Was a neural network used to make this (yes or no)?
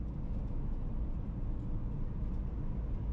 no